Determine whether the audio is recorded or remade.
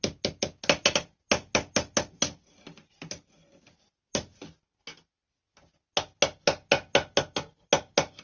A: recorded